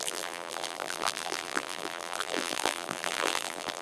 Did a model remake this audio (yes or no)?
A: yes